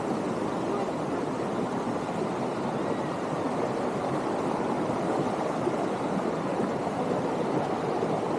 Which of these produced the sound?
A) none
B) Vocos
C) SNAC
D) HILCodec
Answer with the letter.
A